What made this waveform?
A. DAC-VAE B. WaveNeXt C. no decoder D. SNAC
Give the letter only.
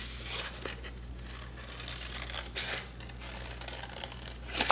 C